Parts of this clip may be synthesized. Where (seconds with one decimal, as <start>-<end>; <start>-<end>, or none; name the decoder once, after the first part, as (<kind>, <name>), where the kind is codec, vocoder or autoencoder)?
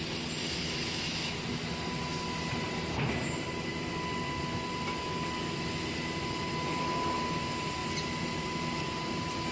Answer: 0.4-1.4 (autoencoder, DAC-VAE)